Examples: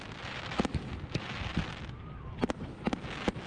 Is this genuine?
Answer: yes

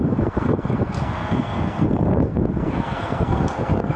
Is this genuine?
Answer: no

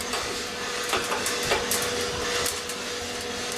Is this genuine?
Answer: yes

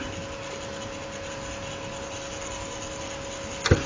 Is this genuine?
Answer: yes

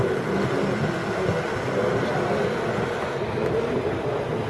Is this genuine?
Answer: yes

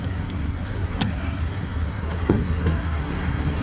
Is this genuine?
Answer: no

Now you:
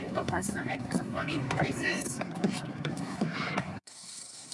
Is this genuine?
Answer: no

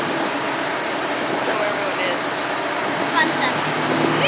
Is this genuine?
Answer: yes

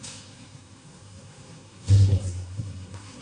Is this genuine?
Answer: no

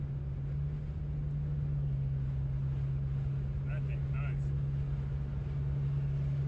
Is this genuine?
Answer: yes